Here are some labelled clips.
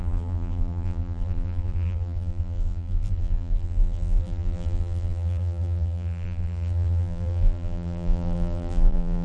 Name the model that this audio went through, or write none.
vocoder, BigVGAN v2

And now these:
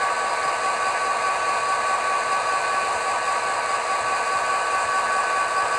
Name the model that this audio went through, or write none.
none